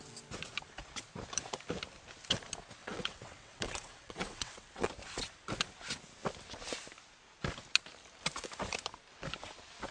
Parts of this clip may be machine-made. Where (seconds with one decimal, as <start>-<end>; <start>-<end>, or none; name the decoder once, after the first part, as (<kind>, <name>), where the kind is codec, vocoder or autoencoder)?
2.8-4.9 (vocoder, WaveNeXt)